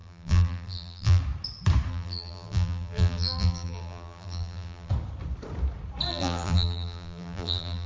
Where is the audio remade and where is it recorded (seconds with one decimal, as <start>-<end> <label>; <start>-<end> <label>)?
0.0-1.2 remade; 1.2-1.9 recorded; 1.9-4.9 remade; 4.9-6.1 recorded; 6.1-7.9 remade